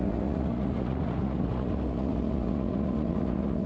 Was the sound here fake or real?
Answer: fake